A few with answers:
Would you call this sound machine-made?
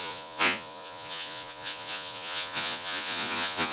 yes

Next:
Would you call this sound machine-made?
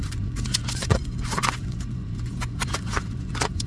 yes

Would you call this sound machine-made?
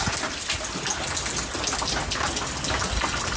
no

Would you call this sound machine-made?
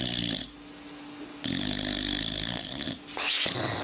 no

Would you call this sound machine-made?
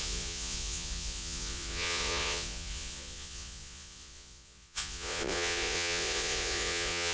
yes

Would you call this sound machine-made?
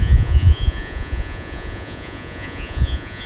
yes